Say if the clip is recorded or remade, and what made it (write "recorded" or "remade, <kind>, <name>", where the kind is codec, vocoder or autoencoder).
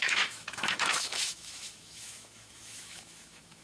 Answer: remade, autoencoder, DAC-VAE